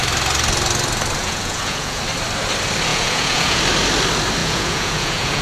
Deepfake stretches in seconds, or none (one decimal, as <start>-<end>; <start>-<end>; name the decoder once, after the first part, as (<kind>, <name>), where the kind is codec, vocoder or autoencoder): 1.2-2.0 (vocoder, Vocos); 2.9-3.6; 4.4-5.4